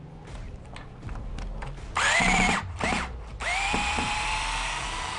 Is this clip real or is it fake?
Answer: fake